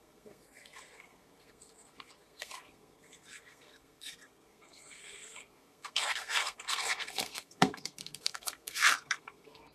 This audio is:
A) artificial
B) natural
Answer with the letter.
A